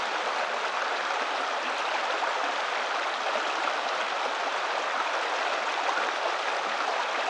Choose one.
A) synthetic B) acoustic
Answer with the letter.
B